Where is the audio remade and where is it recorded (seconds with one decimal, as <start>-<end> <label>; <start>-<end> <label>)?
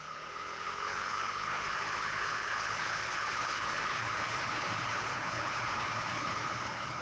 0.0-7.0 remade